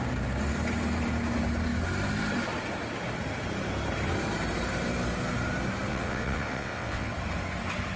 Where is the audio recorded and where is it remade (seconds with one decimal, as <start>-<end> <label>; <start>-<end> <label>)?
0.0-5.9 recorded; 5.9-7.1 remade; 7.1-8.0 recorded